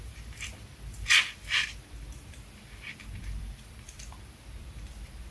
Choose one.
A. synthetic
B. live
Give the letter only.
A